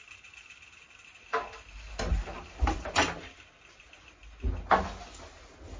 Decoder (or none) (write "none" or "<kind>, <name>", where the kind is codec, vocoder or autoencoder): none